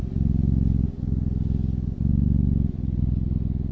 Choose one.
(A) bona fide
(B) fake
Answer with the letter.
A